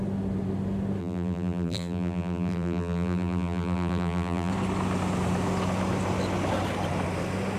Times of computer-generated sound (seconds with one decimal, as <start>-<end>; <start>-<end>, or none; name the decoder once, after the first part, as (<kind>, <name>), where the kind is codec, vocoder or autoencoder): 1.0-4.5 (vocoder, BigVGAN v2)